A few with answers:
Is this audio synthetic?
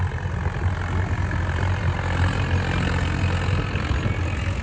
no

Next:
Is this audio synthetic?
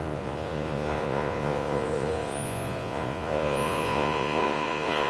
yes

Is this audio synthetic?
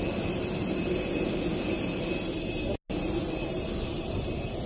no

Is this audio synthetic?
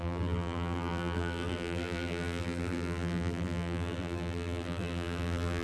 yes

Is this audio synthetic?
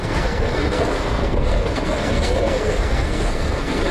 yes